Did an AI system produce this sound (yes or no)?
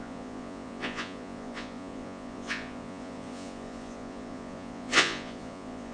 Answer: yes